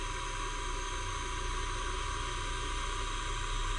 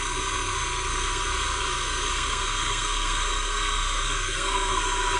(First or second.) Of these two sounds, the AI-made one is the second